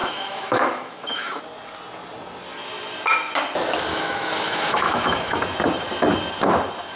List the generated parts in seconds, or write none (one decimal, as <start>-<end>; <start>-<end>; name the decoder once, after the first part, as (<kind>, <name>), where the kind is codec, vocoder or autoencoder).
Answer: 0.0-1.4 (autoencoder, DAC-VAE); 3.9-5.4